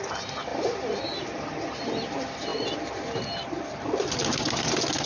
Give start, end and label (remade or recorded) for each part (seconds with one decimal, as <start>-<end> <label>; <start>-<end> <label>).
0.0-0.5 recorded; 0.5-1.0 remade; 1.0-2.5 recorded; 2.5-3.3 remade; 3.3-5.1 recorded